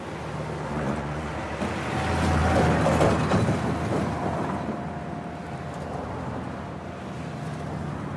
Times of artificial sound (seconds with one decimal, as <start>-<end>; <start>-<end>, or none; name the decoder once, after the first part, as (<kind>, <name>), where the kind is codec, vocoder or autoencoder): 0.7-1.3 (vocoder, Vocos)

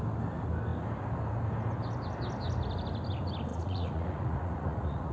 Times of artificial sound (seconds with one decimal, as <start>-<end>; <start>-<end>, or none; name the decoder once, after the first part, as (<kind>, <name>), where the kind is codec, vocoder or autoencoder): 3.5-5.1 (vocoder, Vocos)

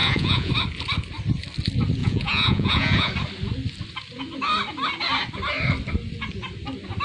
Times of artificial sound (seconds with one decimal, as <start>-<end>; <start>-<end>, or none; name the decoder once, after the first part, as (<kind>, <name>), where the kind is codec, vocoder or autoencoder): 0.0-0.5 (vocoder, Vocos); 2.0-3.1

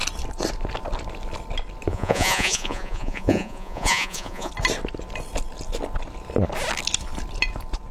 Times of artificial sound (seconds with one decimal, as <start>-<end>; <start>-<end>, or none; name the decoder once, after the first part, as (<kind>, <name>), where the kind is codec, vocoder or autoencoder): 1.9-4.5 (vocoder, Vocos)

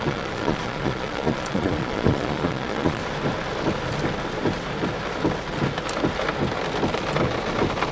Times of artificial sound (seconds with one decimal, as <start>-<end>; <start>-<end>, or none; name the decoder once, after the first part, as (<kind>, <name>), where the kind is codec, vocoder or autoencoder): 0.0-3.0 (vocoder, Vocos)